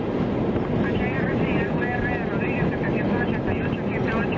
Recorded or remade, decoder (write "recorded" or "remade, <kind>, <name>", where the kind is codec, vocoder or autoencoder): recorded